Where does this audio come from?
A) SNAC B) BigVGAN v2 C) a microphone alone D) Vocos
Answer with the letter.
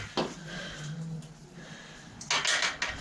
C